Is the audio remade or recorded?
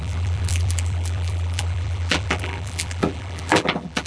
remade